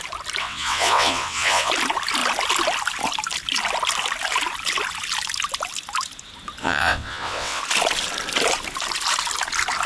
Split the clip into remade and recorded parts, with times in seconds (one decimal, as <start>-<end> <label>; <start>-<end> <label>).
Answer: 0.0-0.4 recorded; 0.4-1.7 remade; 1.7-6.6 recorded; 6.6-7.6 remade; 7.6-9.9 recorded